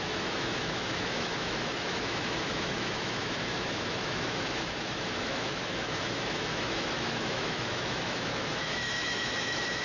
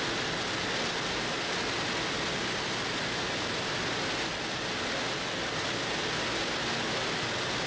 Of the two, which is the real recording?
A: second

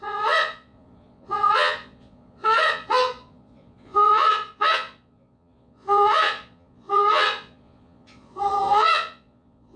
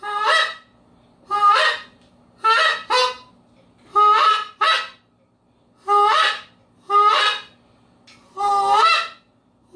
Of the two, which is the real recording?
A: second